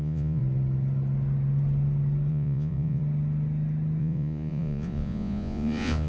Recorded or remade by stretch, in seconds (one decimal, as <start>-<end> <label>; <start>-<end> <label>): 0.0-0.4 remade; 0.4-2.3 recorded; 2.3-3.0 remade; 3.0-4.0 recorded; 4.0-6.1 remade

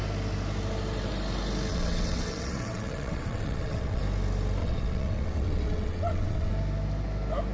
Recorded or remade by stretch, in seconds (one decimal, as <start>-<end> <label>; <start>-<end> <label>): 0.0-1.7 recorded; 1.7-4.0 remade; 4.0-4.6 recorded; 4.6-6.5 remade; 6.5-7.5 recorded

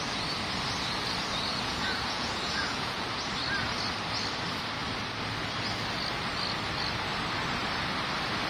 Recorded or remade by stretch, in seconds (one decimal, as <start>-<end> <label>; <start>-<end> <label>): 0.0-1.5 recorded; 1.5-3.1 remade; 3.1-8.5 recorded

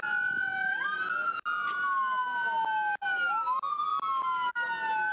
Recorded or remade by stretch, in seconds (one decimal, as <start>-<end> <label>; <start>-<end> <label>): 0.0-5.1 recorded

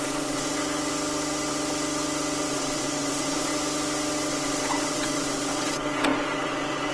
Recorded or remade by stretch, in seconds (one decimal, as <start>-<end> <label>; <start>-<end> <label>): 0.0-0.5 remade; 0.5-2.5 recorded; 2.5-3.5 remade; 3.5-4.3 recorded; 4.3-6.9 remade

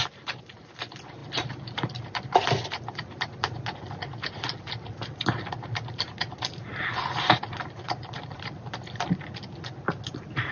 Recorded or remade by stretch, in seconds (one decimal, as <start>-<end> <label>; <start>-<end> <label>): 0.0-10.5 recorded

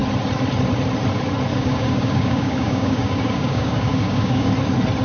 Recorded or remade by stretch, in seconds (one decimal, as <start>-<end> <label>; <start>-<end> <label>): 0.0-1.5 recorded; 1.5-4.5 remade; 4.5-5.0 recorded